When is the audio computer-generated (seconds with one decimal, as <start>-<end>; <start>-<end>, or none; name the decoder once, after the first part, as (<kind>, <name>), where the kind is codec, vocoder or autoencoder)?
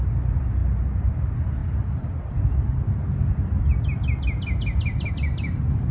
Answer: 0.0-0.6 (vocoder, BigVGAN v2); 1.1-1.6; 5.1-5.9